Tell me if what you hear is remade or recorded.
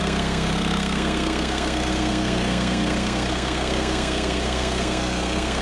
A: remade